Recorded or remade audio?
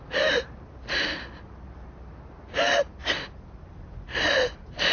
recorded